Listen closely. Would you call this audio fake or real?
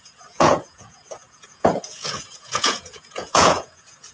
fake